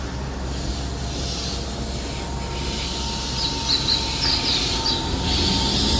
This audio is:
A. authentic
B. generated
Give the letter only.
A